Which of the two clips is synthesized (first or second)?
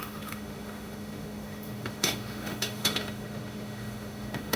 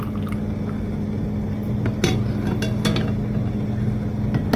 first